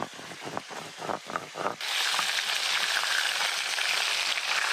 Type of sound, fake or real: real